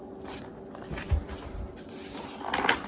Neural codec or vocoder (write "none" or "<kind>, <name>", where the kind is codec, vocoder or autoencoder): none